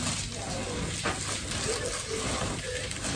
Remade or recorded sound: recorded